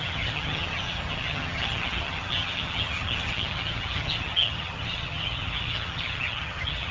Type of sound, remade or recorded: remade